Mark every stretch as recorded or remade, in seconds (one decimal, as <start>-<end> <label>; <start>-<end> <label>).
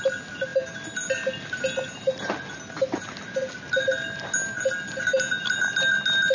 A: 0.0-6.3 recorded